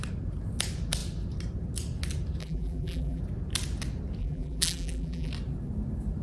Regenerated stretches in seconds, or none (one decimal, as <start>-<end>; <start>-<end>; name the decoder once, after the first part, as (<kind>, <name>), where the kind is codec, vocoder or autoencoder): 2.4-3.2 (vocoder, BigVGAN v2); 4.2-5.3